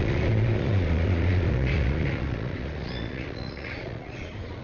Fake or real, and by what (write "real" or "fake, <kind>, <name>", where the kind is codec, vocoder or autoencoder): fake, vocoder, Vocos